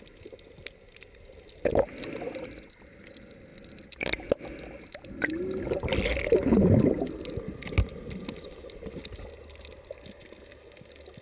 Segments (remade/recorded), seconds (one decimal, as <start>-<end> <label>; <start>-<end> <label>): 0.0-11.2 recorded